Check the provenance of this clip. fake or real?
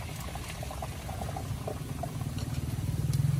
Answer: real